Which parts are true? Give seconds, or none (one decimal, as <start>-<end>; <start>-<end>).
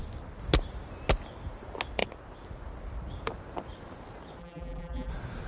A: 0.0-4.4; 5.1-5.5